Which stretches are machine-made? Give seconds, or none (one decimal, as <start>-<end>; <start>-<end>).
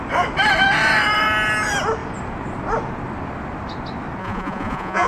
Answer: 4.2-5.1